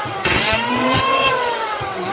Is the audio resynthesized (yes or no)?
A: yes